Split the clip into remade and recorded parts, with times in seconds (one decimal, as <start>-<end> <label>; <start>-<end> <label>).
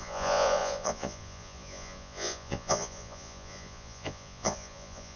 0.0-5.2 remade